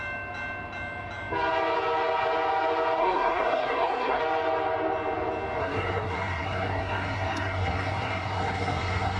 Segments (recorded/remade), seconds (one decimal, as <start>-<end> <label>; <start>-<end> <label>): 0.0-3.0 recorded; 3.0-4.2 remade; 4.2-5.6 recorded; 5.6-9.2 remade